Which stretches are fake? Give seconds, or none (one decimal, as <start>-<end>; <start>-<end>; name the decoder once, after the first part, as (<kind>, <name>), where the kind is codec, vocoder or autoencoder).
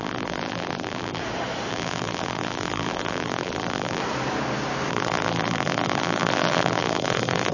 0.0-1.2 (vocoder, BigVGAN v2); 1.7-4.0; 4.9-7.5